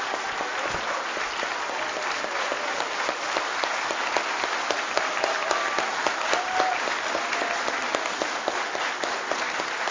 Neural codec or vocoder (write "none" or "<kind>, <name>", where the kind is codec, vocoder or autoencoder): none